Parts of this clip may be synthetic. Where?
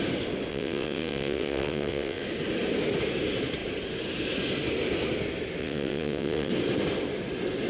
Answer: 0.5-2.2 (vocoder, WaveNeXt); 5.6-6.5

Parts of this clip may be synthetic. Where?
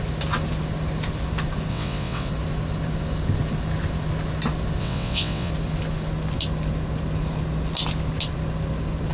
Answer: 1.7-2.3 (vocoder, WaveNeXt); 4.8-5.5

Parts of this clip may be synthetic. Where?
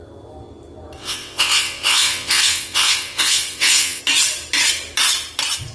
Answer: 1.0-4.0 (vocoder, WaveNeXt)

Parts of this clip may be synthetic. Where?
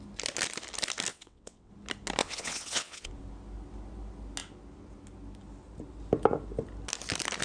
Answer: 1.1-1.7 (vocoder, WaveNeXt); 2.2-3.1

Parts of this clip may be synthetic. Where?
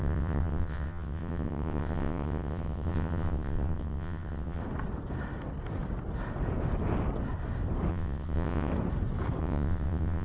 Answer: 0.0-4.6 (vocoder, WaveNeXt); 7.9-8.7; 9.4-10.2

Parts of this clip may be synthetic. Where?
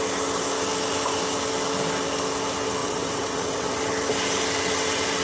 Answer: 2.8-3.8 (vocoder, WaveNeXt)